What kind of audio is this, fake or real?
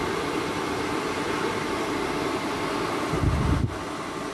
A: real